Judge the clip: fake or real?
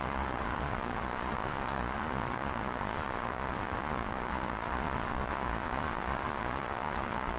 fake